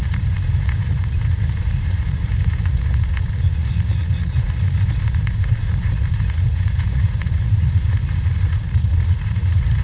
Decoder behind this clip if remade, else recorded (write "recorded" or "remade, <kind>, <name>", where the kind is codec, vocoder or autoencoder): remade, vocoder, Vocos